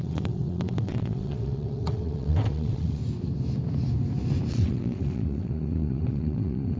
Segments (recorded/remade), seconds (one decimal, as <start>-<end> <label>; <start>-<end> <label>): 0.0-3.0 remade; 3.0-4.5 recorded; 4.5-6.8 remade

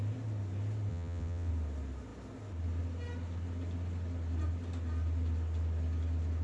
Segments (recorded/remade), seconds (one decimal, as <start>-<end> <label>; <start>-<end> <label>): 0.0-0.9 recorded; 0.9-1.5 remade; 1.5-6.4 recorded

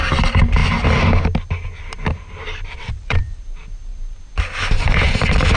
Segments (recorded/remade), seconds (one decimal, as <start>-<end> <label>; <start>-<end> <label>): 0.0-2.7 recorded; 2.7-3.4 remade; 3.4-5.6 recorded

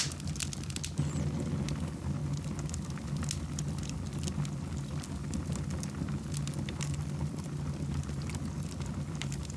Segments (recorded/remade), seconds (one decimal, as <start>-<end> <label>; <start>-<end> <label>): 0.0-9.6 recorded

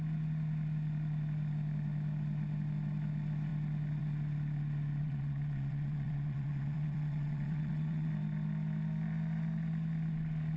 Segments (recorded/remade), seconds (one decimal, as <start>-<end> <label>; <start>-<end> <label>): 0.0-5.0 recorded; 5.0-8.1 remade; 8.1-10.6 recorded

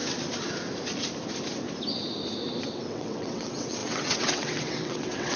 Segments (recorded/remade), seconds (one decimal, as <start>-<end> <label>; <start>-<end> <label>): 0.0-2.7 recorded; 2.7-5.4 remade

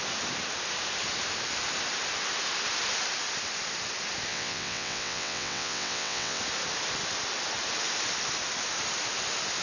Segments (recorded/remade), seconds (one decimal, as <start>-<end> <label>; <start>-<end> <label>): 0.0-4.3 recorded; 4.3-6.4 remade; 6.4-9.6 recorded